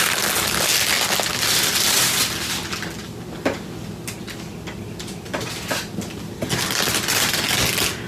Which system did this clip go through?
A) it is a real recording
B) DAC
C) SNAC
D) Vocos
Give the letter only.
A